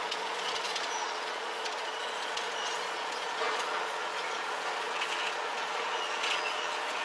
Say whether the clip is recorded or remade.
remade